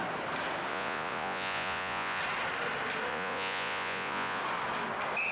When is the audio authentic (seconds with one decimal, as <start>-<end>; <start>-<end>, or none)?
0.0-0.7; 2.2-3.1; 4.4-5.3